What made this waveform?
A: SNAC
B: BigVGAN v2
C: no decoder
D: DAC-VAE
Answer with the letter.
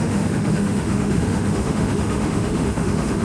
D